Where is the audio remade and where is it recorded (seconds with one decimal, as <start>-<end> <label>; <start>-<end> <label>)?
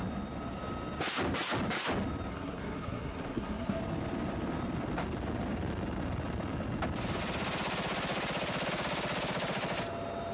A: 0.0-2.3 recorded; 2.3-3.8 remade; 3.8-10.3 recorded